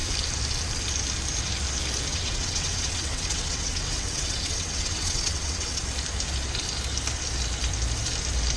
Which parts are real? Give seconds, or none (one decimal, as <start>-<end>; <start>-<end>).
0.0-2.1; 5.8-8.6